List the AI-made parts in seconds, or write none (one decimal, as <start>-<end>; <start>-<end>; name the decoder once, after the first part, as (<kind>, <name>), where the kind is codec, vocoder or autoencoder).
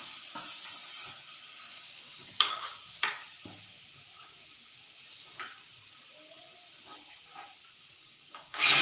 1.7-2.7 (codec, DAC); 7.9-8.8